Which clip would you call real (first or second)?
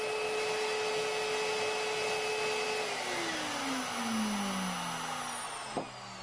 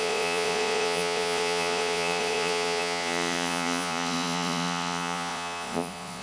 first